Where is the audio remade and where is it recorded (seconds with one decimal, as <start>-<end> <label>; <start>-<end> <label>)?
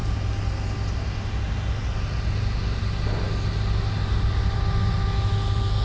0.0-5.8 recorded